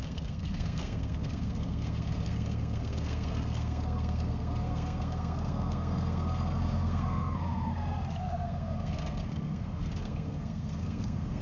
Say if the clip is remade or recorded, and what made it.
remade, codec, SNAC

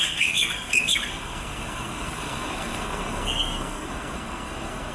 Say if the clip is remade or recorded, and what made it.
remade, codec, SNAC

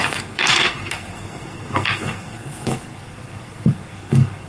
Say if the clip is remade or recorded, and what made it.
remade, codec, SNAC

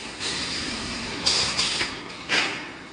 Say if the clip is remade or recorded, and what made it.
remade, codec, SNAC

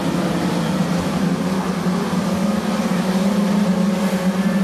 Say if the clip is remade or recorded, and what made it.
recorded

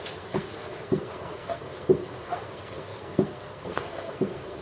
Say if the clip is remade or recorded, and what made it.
remade, codec, SNAC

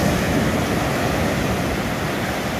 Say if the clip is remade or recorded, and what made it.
recorded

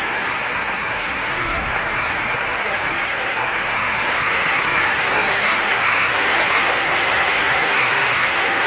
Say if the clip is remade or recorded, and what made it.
remade, codec, SNAC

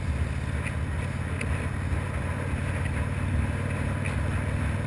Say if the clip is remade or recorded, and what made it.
recorded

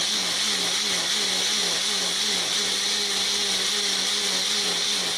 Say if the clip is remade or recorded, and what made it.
recorded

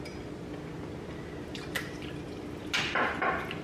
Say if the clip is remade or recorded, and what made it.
recorded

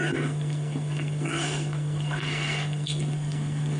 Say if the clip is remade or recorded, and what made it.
remade, codec, SNAC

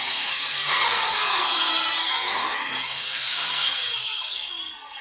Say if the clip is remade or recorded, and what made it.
remade, codec, SNAC